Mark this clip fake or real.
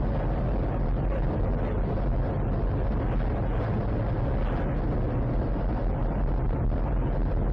real